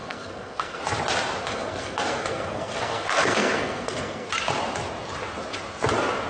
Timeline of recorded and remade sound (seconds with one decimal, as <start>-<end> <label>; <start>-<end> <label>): 0.0-0.8 remade; 0.8-1.4 recorded; 1.4-4.3 remade; 4.3-6.3 recorded